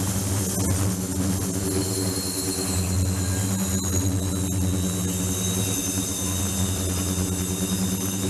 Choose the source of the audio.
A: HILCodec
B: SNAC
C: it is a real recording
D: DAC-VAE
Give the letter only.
C